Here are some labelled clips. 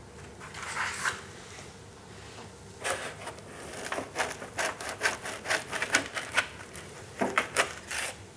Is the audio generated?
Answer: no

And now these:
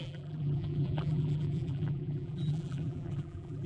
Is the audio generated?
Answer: yes